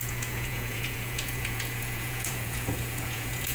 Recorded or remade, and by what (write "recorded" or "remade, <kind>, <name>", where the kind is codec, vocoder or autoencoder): remade, vocoder, Vocos